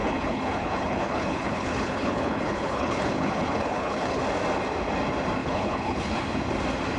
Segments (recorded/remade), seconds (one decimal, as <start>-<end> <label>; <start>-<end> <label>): 0.0-4.2 remade; 4.2-5.4 recorded; 5.4-6.2 remade; 6.2-7.0 recorded